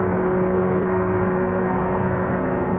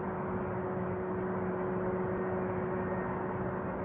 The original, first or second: second